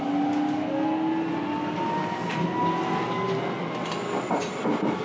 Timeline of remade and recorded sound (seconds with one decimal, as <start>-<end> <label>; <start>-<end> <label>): 0.0-5.0 recorded